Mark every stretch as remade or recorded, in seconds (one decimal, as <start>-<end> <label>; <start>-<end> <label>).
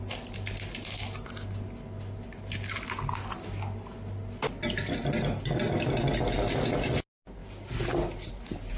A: 0.0-8.8 recorded